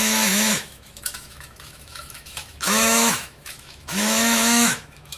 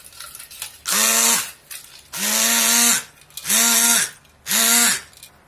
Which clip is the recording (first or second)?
second